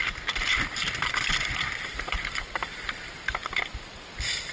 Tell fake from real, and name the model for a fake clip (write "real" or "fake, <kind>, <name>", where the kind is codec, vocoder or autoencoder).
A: fake, vocoder, BigVGAN v2